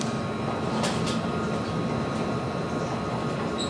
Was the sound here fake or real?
real